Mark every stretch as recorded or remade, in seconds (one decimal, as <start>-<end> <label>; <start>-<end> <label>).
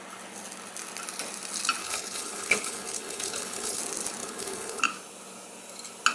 0.0-1.8 recorded; 1.8-3.8 remade; 3.8-4.2 recorded; 4.2-4.8 remade; 4.8-6.1 recorded